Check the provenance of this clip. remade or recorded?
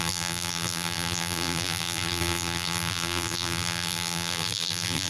remade